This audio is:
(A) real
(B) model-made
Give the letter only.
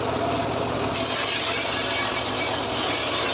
A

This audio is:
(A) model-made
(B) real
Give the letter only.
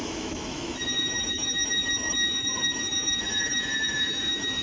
A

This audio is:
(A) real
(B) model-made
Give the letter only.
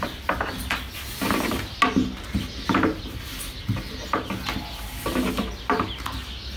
A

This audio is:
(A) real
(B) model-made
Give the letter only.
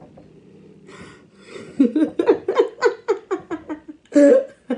A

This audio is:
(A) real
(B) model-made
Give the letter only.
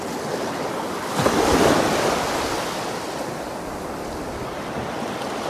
A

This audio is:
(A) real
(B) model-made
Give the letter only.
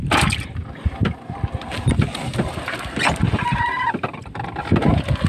A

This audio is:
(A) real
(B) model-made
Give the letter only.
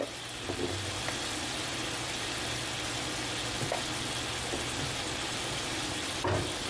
A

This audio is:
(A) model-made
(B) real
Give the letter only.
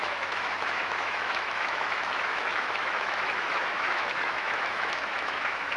A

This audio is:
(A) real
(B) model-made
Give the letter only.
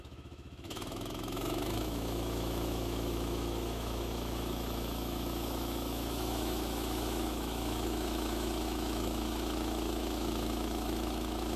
B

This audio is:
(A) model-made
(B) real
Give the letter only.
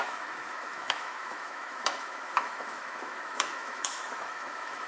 A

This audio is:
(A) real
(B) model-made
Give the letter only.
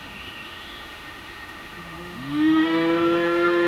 B